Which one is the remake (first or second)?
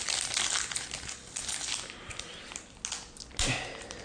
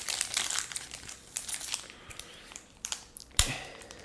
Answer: second